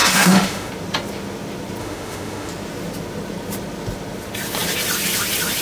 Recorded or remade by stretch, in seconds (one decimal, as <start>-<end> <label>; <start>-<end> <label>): 0.0-0.7 remade; 0.7-1.8 recorded; 1.8-2.5 remade; 2.5-5.6 recorded